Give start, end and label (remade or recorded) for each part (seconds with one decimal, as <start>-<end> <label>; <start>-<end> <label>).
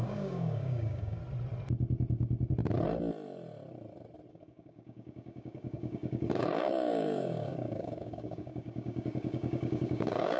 0.0-1.2 remade; 1.2-4.3 recorded; 4.3-10.4 remade